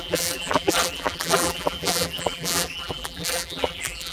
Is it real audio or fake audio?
fake